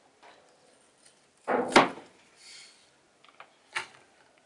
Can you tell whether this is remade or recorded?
recorded